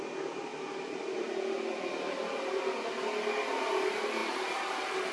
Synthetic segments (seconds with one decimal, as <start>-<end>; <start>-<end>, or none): none